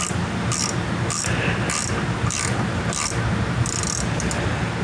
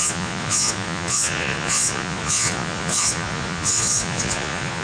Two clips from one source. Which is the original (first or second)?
first